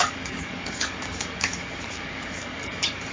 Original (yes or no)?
no